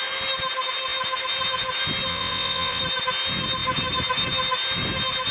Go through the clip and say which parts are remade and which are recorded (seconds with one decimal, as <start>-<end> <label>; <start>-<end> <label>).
0.0-2.1 recorded; 2.1-2.8 remade; 2.8-5.3 recorded

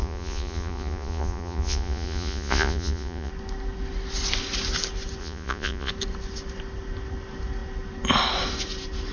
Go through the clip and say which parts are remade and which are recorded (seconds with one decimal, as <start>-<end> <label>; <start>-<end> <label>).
0.0-3.3 remade; 3.3-5.2 recorded; 5.2-5.9 remade; 5.9-9.1 recorded

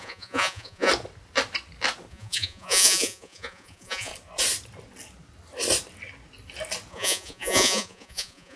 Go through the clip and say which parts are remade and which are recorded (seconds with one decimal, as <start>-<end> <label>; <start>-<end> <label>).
0.0-0.9 remade; 0.9-2.1 recorded; 2.1-4.1 remade; 4.1-6.9 recorded; 6.9-8.6 remade